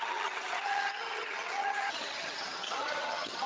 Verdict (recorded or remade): remade